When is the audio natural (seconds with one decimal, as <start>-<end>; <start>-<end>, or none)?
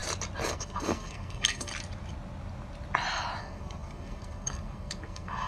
0.0-0.5; 1.7-3.4